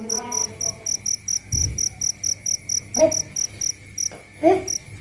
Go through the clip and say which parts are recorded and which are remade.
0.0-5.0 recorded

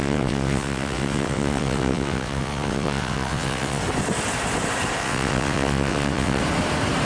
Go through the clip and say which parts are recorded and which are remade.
0.0-3.8 remade; 3.8-5.0 recorded; 5.0-6.4 remade; 6.4-7.0 recorded

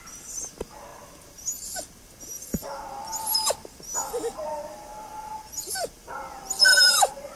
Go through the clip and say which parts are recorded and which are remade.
0.0-4.5 recorded; 4.5-5.3 remade; 5.3-6.7 recorded; 6.7-7.4 remade

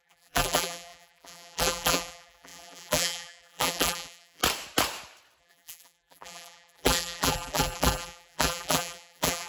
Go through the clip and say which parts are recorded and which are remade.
0.0-4.4 remade; 4.4-5.4 recorded; 5.4-9.5 remade

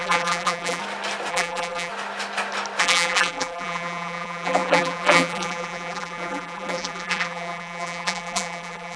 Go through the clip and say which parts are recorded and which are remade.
0.0-0.8 remade; 0.8-1.3 recorded; 1.3-1.9 remade; 1.9-2.8 recorded; 2.8-9.0 remade

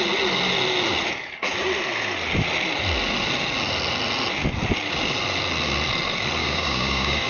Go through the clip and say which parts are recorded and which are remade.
0.0-6.4 recorded; 6.4-7.3 remade

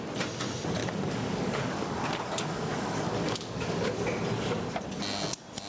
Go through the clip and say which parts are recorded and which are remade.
0.0-0.8 recorded; 0.8-4.0 remade; 4.0-5.7 recorded